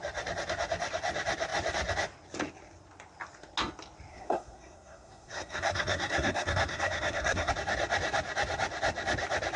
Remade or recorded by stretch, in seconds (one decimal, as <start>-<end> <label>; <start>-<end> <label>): 0.0-4.1 recorded; 4.1-7.5 remade; 7.5-9.6 recorded